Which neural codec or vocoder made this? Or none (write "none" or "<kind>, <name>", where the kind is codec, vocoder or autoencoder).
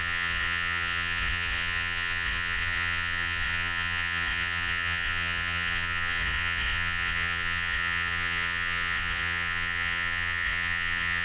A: vocoder, Vocos